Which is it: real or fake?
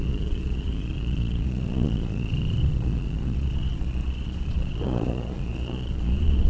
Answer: fake